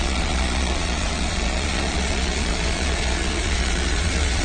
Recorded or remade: remade